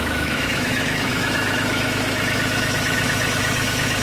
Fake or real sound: fake